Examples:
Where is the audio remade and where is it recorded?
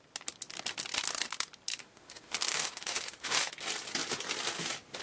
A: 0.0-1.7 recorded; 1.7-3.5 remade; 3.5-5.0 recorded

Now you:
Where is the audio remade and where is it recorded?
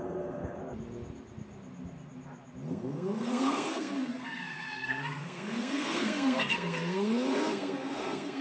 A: 0.0-0.6 remade; 0.6-2.7 recorded; 2.7-8.4 remade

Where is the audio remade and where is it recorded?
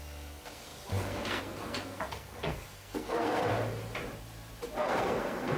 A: 0.0-3.5 remade; 3.5-4.8 recorded; 4.8-5.6 remade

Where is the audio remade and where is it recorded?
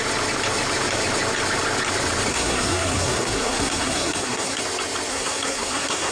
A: 0.0-2.3 recorded; 2.3-4.6 remade; 4.6-5.1 recorded; 5.1-6.1 remade